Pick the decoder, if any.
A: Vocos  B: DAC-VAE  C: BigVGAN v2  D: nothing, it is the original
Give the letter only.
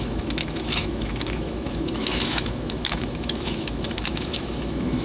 B